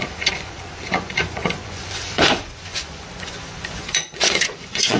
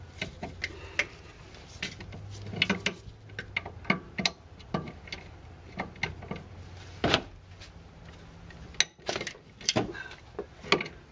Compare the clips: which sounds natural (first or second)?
second